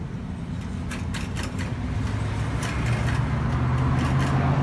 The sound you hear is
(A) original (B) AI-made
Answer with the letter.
A